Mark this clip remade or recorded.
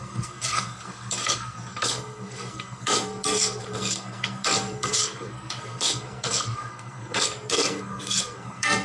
remade